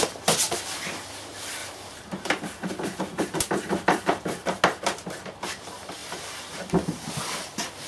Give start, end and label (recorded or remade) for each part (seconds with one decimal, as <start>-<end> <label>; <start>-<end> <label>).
0.0-1.6 recorded; 1.6-4.6 remade; 4.6-6.0 recorded; 6.0-7.2 remade; 7.2-7.9 recorded